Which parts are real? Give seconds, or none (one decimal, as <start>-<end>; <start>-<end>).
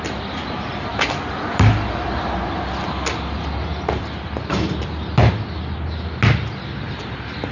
0.0-7.5